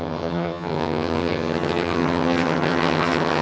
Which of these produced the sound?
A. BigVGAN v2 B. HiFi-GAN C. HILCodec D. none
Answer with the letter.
B